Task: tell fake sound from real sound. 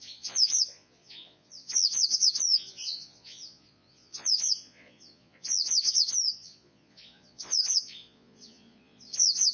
fake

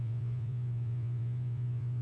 fake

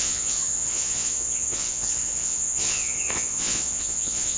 fake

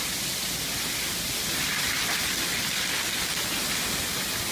real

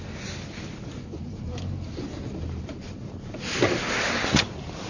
real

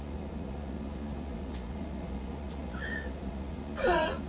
fake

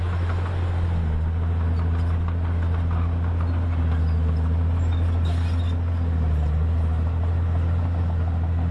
real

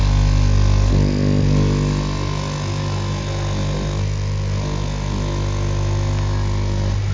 real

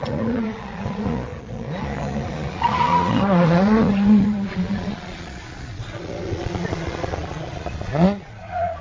fake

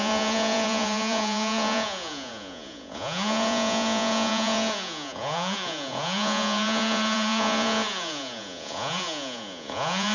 fake